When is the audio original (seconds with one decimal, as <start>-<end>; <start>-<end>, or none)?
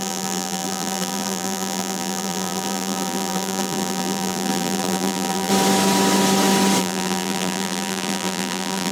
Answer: 5.5-6.8